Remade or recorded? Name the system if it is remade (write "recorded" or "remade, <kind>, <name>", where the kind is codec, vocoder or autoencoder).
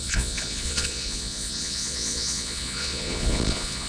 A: remade, vocoder, Vocos